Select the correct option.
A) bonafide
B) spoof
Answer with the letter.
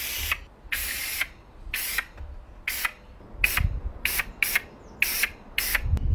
A